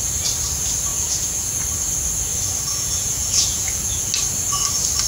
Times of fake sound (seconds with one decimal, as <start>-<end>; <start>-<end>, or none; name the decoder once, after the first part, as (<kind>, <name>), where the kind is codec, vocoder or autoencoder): 0.9-1.5 (vocoder, Vocos); 2.7-4.1